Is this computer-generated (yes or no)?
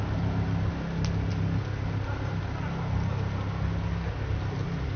no